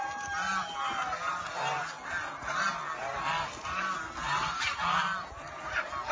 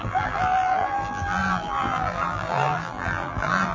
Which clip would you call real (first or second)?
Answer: first